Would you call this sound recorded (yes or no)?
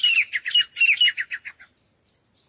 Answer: yes